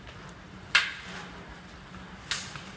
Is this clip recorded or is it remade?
recorded